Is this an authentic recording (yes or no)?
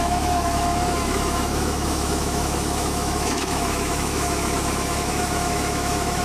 no